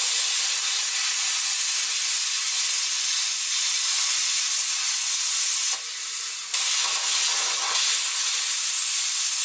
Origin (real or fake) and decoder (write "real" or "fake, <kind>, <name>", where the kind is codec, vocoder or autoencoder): real